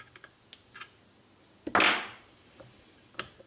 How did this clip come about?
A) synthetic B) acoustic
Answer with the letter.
B